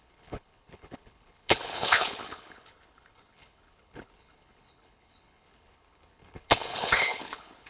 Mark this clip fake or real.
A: fake